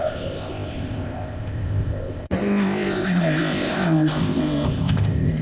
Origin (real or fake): fake